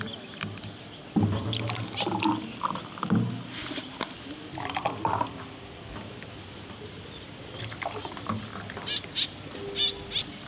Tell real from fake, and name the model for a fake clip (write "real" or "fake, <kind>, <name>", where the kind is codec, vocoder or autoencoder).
real